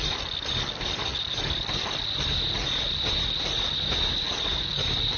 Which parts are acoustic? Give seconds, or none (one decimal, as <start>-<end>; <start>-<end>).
0.0-5.2